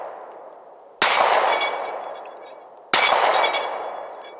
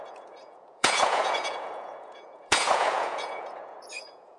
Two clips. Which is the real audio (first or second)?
first